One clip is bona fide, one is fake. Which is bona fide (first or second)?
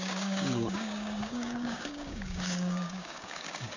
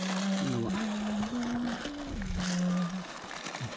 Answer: second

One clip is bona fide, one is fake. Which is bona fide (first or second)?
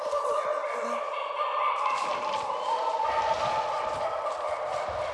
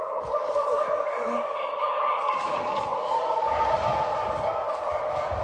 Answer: first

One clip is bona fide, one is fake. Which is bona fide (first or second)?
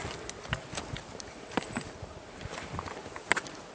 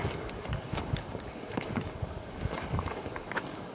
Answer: first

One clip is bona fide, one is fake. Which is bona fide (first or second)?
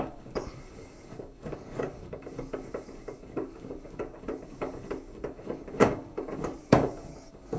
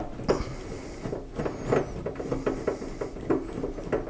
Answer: second